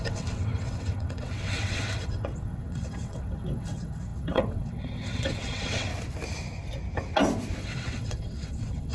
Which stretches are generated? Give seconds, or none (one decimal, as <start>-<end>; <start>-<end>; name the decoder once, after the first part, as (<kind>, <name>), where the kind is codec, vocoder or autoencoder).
0.0-5.9 (vocoder, WaveNeXt); 7.6-8.9